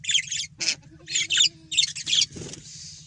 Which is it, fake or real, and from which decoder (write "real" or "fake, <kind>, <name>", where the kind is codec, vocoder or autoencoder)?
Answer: real